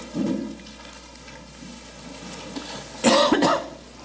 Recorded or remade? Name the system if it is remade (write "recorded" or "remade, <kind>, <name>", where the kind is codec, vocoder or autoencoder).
recorded